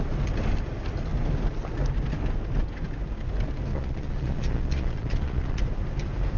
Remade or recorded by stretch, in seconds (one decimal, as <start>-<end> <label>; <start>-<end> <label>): 0.0-3.7 recorded; 3.7-5.6 remade; 5.6-6.4 recorded